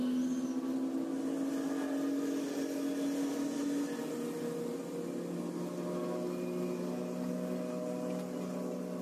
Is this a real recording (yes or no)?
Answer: yes